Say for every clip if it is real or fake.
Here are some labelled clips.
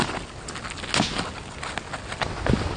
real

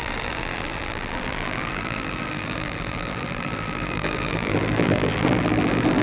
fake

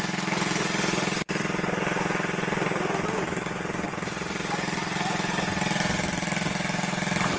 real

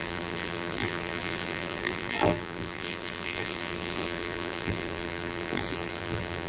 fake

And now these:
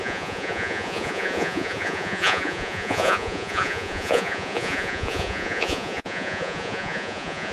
fake